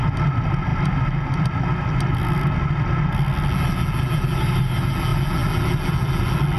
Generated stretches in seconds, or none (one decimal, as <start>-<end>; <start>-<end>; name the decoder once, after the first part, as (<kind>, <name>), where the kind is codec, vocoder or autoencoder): none